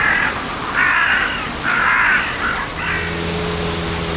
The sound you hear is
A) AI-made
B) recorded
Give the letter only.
B